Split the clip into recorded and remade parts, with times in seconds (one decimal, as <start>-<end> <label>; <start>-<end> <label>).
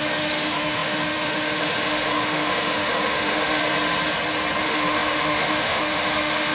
0.0-3.6 remade; 3.6-4.6 recorded; 4.6-6.5 remade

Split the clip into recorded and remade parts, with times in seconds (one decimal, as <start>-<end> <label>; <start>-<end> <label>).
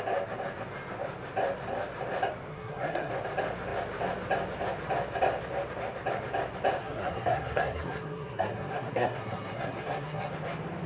0.0-2.5 recorded; 2.5-3.1 remade; 3.1-6.8 recorded; 6.8-10.3 remade; 10.3-10.9 recorded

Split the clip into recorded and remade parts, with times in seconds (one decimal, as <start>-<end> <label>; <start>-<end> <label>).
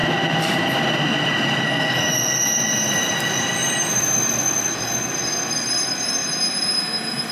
0.0-1.0 remade; 1.0-3.6 recorded; 3.6-4.2 remade; 4.2-6.2 recorded; 6.2-7.3 remade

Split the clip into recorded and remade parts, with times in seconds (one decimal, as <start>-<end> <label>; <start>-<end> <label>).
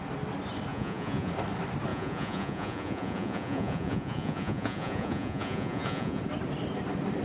0.0-0.7 recorded; 0.7-1.3 remade; 1.3-1.9 recorded; 1.9-6.2 remade; 6.2-7.2 recorded